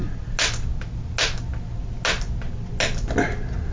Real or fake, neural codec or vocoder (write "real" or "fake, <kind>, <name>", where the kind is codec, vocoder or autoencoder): real